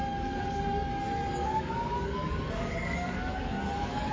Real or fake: fake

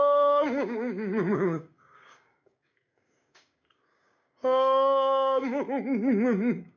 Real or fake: fake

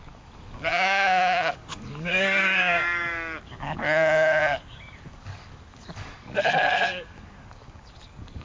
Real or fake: fake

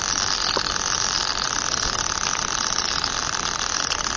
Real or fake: real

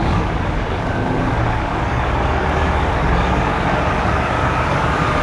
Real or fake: fake